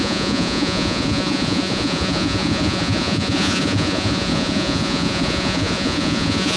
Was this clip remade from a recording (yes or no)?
yes